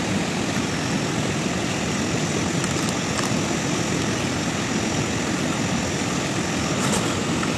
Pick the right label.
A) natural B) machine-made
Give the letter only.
A